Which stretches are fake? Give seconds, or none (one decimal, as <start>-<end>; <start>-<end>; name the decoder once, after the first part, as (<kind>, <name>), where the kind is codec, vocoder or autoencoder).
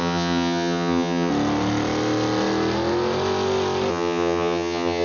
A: 0.0-1.3 (vocoder, HiFi-GAN); 3.9-5.0